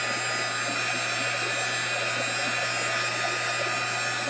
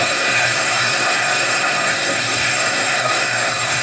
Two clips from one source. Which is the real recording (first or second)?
first